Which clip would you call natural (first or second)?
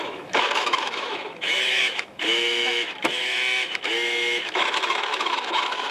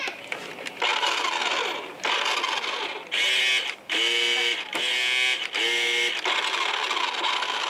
second